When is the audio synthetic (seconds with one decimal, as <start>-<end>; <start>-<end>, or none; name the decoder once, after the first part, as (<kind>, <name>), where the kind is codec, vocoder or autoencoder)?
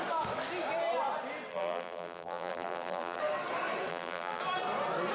1.5-3.2 (vocoder, BigVGAN v2); 3.9-4.4